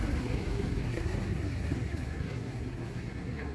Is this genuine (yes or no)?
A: no